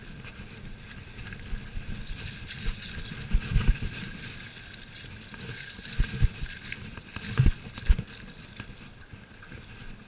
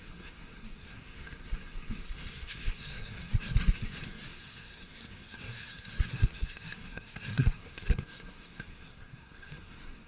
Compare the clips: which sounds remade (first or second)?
second